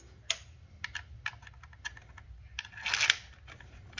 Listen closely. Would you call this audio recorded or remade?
recorded